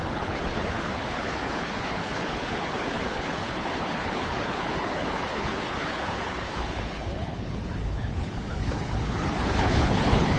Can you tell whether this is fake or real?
fake